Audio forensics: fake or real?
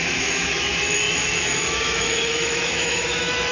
fake